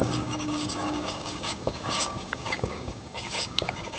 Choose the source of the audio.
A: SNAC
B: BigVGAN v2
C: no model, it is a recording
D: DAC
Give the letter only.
D